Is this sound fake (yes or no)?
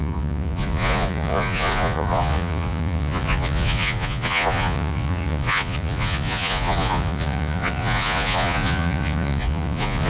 yes